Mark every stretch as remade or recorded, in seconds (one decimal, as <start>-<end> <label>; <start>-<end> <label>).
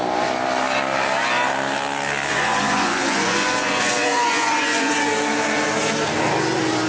0.0-2.3 recorded; 2.3-4.9 remade; 4.9-6.9 recorded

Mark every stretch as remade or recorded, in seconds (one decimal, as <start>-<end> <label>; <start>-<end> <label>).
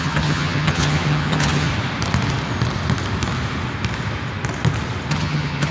0.0-1.7 remade; 1.7-5.1 recorded; 5.1-5.7 remade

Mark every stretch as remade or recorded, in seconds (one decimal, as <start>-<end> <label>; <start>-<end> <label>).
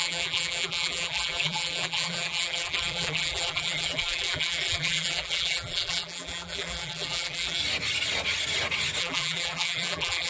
0.0-7.6 remade; 7.6-9.0 recorded; 9.0-10.3 remade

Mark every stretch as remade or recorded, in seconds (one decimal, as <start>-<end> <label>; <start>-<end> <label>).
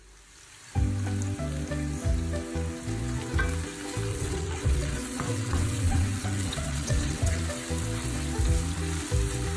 0.0-4.1 recorded; 4.1-7.4 remade; 7.4-9.6 recorded